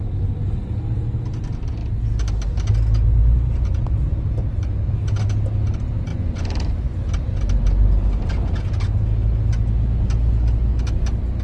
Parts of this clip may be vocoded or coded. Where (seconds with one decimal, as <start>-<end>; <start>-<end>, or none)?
6.1-7.1